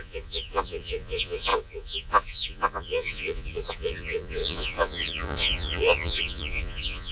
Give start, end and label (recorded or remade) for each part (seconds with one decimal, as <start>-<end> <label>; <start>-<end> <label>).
0.0-7.1 remade